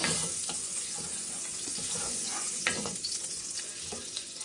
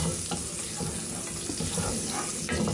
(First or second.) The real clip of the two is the second